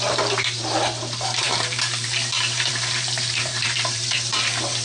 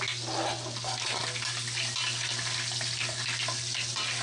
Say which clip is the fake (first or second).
first